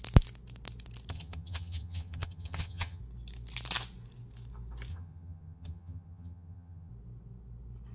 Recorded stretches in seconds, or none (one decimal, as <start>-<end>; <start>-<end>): 0.0-1.1; 3.0-4.9; 6.9-7.9

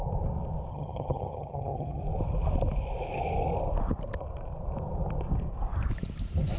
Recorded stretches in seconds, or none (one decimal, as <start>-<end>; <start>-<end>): 0.0-0.7; 2.0-6.6

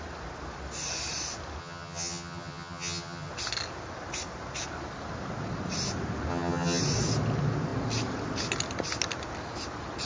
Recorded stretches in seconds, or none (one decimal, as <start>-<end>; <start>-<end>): 0.0-1.6; 3.3-6.3; 6.8-10.1